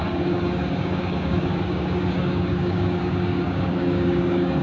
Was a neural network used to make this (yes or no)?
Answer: yes